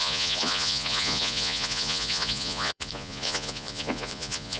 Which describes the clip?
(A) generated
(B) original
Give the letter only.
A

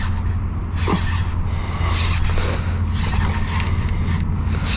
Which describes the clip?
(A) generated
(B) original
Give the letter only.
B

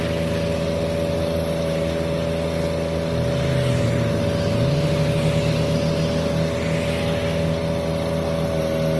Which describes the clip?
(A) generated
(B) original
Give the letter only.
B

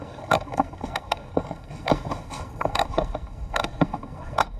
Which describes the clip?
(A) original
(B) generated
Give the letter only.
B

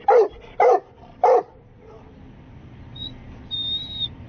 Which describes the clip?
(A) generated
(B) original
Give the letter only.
B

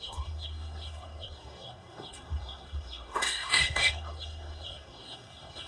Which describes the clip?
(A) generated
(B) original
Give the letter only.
A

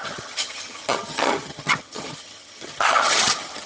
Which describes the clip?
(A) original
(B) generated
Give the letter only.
B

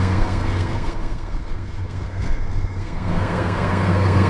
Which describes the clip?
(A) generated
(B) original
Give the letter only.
A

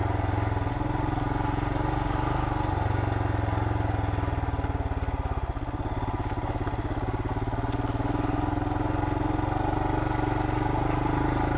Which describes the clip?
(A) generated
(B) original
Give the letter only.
B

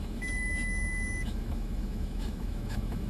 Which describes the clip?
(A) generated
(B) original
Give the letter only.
A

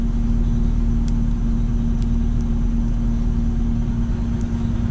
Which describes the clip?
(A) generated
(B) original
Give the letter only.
B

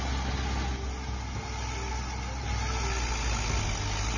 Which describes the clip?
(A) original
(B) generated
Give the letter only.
A